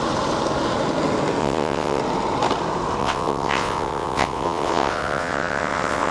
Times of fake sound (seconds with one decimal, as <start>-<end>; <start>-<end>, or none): 1.4-2.0; 3.0-6.1